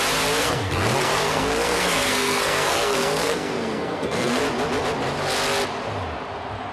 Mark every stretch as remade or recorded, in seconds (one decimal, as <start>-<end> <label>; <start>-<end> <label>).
0.0-0.4 recorded; 0.4-4.4 remade; 4.4-6.7 recorded